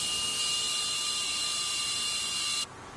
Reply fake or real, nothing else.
fake